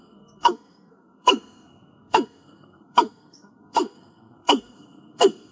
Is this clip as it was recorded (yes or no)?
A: no